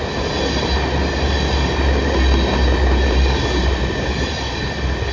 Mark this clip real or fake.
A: real